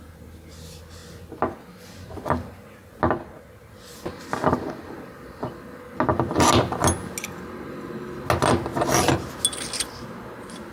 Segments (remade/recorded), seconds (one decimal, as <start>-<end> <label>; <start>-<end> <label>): 0.0-10.7 recorded